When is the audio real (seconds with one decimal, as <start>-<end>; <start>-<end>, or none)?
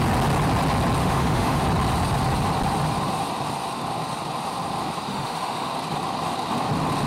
0.0-1.0; 1.6-5.1; 5.7-7.1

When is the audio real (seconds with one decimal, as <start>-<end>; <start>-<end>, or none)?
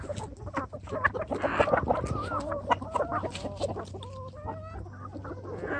0.0-5.8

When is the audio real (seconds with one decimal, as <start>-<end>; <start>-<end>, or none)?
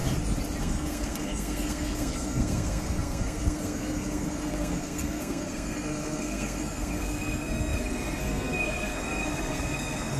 0.0-0.6